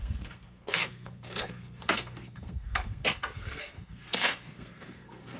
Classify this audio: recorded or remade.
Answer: remade